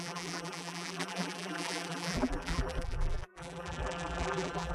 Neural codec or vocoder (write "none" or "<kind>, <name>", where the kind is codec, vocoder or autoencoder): vocoder, BigVGAN v2